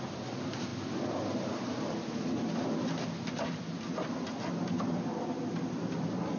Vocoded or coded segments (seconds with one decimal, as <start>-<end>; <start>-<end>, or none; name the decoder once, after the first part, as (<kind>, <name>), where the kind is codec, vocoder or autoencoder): none